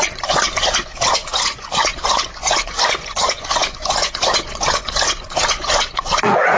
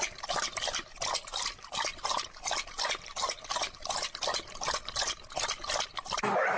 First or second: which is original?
second